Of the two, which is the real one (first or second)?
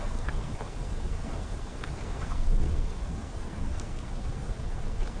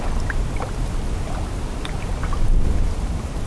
second